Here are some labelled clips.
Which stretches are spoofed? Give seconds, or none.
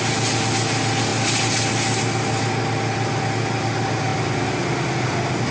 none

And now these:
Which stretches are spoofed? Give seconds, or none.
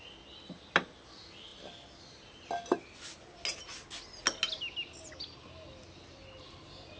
none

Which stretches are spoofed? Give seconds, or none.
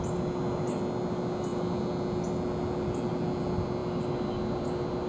none